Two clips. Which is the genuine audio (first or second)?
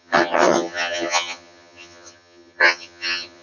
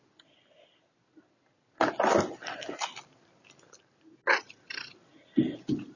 second